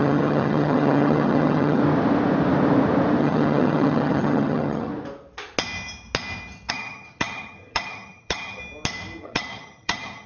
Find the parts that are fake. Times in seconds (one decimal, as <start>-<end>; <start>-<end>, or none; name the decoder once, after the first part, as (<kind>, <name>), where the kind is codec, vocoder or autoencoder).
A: 0.0-1.8 (vocoder, HiFi-GAN); 3.2-4.9; 6.7-8.6; 9.2-10.3